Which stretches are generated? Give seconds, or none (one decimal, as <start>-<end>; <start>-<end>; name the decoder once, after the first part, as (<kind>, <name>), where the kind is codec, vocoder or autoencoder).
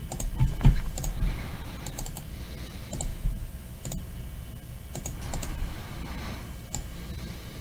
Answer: 3.1-3.8 (autoencoder, DAC-VAE)